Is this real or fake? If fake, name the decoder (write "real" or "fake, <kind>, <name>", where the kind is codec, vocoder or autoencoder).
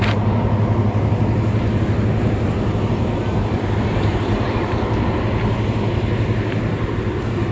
real